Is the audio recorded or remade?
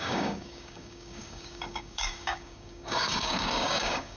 remade